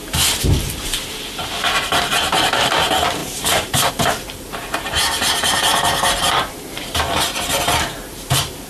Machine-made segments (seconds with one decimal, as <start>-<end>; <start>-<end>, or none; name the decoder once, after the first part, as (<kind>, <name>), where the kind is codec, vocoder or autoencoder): 0.0-8.7 (vocoder, BigVGAN v2)